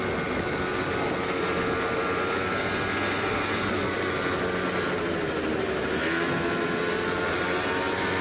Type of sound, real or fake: real